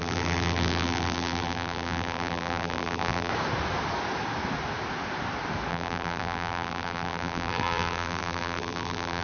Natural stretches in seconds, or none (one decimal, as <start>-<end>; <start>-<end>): 3.3-5.7

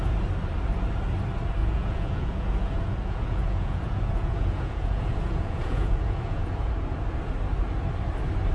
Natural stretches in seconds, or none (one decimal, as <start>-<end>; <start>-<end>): 0.0-1.6; 6.7-8.5